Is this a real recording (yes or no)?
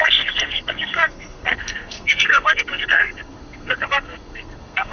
no